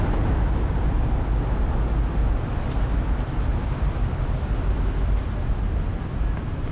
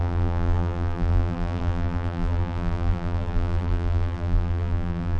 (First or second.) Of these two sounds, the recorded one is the first